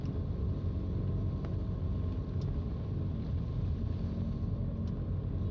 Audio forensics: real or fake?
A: real